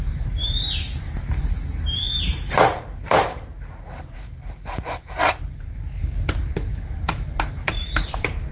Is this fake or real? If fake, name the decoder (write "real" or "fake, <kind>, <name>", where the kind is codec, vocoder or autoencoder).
fake, vocoder, BigVGAN v2